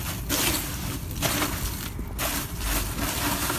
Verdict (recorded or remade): recorded